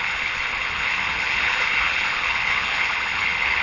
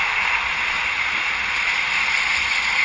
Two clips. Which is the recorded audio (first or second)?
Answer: second